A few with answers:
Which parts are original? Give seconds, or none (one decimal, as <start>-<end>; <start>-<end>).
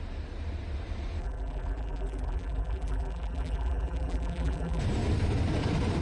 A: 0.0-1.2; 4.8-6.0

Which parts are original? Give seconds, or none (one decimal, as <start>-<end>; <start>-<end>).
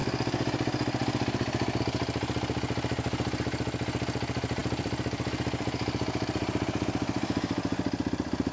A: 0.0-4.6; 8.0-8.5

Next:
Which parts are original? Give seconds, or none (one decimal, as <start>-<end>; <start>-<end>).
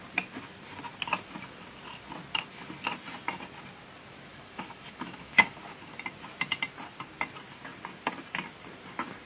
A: 0.0-4.3; 5.6-9.3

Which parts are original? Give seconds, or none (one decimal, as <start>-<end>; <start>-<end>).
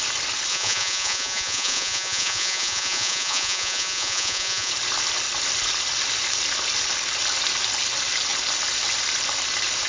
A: 0.0-0.5; 4.7-9.9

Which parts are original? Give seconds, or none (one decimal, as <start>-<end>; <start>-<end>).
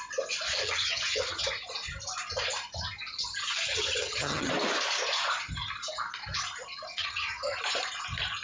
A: 0.0-0.6; 1.4-3.7; 4.5-7.0; 7.6-8.4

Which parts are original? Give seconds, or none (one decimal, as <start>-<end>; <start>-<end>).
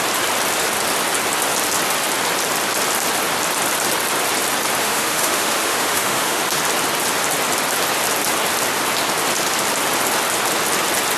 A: 0.0-4.8; 6.4-11.2